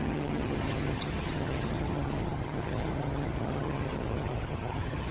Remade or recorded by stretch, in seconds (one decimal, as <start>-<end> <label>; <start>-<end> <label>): 0.0-5.1 remade